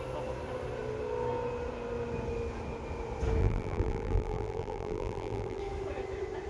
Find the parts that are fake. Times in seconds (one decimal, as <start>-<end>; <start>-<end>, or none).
3.4-5.6